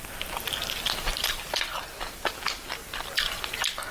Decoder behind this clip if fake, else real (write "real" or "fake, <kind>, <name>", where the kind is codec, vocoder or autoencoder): real